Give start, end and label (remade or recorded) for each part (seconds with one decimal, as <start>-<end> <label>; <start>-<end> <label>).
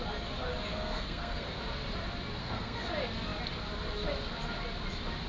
0.0-0.7 recorded; 0.7-1.6 remade; 1.6-2.4 recorded; 2.4-2.9 remade; 2.9-5.3 recorded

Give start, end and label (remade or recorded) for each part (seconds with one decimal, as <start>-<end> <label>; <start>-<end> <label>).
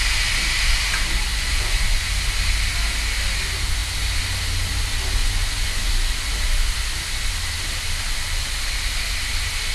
0.0-1.3 recorded; 1.3-2.1 remade; 2.1-5.2 recorded; 5.2-5.9 remade; 5.9-9.7 recorded